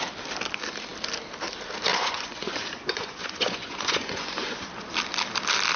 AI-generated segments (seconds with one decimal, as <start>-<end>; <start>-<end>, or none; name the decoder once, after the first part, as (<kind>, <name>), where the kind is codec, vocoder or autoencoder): 1.9-4.7 (vocoder, Vocos)